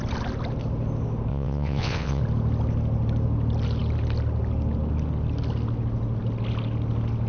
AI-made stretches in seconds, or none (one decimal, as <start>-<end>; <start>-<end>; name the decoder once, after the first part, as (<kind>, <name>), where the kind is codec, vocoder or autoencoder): 1.3-2.2 (vocoder, WaveNeXt)